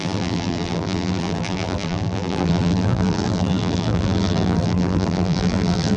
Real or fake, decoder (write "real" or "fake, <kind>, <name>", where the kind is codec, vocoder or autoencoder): fake, vocoder, BigVGAN v2